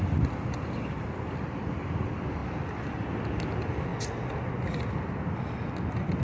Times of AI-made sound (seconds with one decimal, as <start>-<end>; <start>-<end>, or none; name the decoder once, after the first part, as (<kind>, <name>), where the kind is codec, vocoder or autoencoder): none